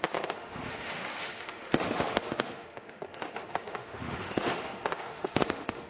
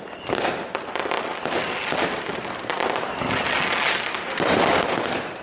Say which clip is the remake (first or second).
first